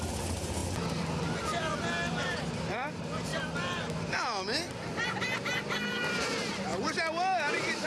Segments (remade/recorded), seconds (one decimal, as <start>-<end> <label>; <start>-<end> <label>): 0.0-0.6 remade; 0.6-2.4 recorded; 2.4-3.3 remade; 3.3-4.7 recorded; 4.7-6.7 remade; 6.7-7.5 recorded; 7.5-7.9 remade